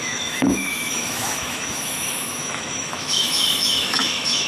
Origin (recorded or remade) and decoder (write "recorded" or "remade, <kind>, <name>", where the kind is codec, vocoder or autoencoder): remade, autoencoder, DAC-VAE